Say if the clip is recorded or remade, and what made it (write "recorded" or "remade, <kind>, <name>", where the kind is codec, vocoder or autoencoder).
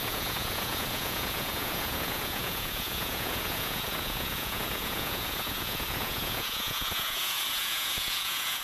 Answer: remade, vocoder, Vocos